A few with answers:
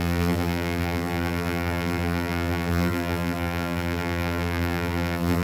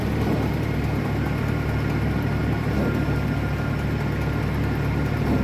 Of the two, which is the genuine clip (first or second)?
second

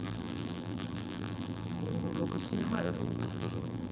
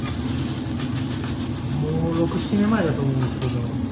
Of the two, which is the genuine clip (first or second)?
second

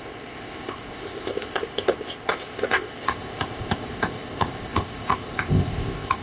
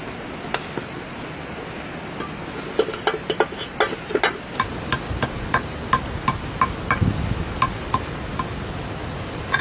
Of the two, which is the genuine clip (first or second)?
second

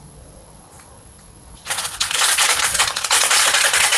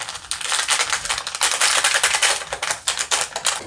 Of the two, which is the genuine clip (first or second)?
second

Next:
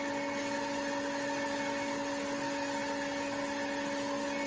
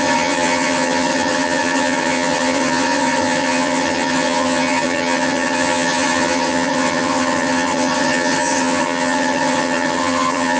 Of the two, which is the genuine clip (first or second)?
first